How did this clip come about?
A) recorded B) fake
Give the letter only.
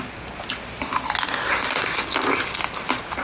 A